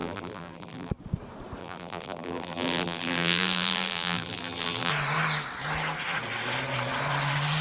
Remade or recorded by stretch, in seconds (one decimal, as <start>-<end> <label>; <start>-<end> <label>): 0.0-0.9 remade; 0.9-1.6 recorded; 1.6-4.9 remade; 4.9-7.6 recorded